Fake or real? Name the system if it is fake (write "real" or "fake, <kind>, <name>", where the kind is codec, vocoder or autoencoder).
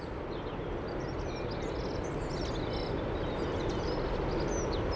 real